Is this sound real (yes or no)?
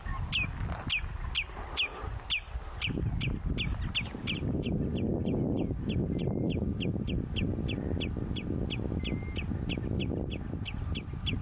yes